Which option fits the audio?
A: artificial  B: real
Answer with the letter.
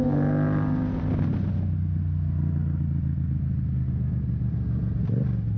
B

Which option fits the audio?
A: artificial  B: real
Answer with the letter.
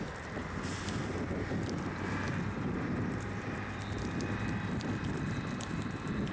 A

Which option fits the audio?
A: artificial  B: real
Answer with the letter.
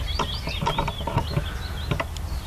B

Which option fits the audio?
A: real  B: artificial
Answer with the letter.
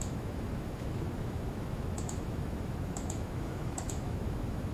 B